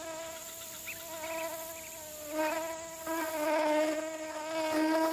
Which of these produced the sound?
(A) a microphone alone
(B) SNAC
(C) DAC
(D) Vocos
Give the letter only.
A